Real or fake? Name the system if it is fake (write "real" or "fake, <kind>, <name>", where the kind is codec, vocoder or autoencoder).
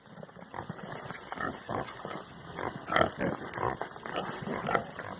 real